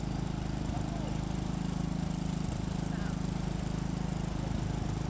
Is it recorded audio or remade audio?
recorded